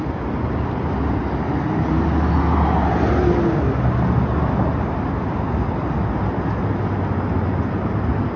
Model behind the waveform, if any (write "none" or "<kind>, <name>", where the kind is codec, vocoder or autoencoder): none